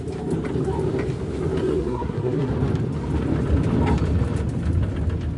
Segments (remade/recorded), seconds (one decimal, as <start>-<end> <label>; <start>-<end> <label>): 0.0-1.6 recorded; 1.6-2.5 remade; 2.5-5.4 recorded